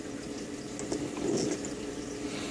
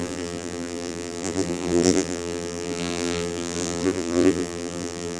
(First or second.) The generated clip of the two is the second